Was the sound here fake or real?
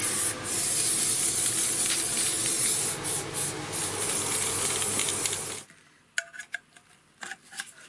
real